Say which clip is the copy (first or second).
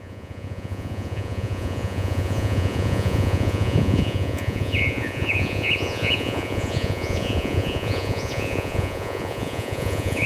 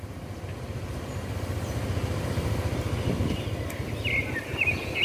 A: first